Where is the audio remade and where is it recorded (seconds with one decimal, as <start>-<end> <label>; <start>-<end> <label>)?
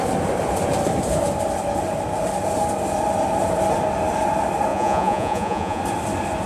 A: 0.0-4.7 recorded; 4.7-5.8 remade; 5.8-6.5 recorded